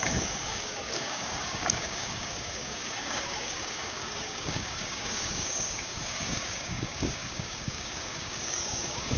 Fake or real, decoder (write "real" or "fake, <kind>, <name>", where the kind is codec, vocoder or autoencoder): fake, codec, DAC